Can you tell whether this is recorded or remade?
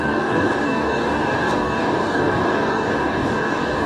remade